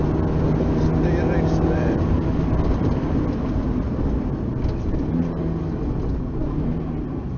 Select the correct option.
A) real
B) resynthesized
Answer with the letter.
A